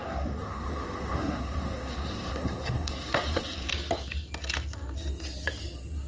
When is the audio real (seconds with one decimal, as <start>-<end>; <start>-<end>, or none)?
3.7-6.1